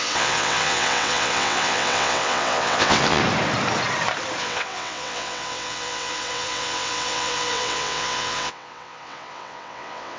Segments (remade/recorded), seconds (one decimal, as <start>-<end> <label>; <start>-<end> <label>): 0.0-3.2 remade; 3.2-4.4 recorded; 4.4-10.2 remade